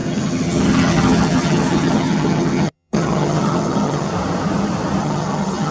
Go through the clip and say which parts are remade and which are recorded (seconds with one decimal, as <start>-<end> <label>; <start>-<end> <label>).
0.0-4.1 remade; 4.1-5.0 recorded; 5.0-5.7 remade